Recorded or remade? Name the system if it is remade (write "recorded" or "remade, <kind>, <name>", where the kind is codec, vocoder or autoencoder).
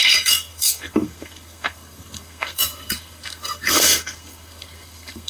remade, codec, SNAC